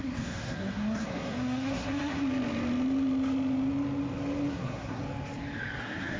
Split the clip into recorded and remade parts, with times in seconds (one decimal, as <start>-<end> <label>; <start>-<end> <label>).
0.0-2.2 remade; 2.2-4.5 recorded; 4.5-5.0 remade; 5.0-5.8 recorded; 5.8-6.2 remade